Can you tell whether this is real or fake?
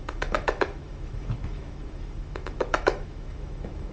fake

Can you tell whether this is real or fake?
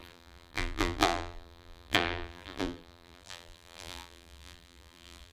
fake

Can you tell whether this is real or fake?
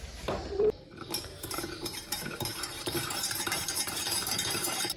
fake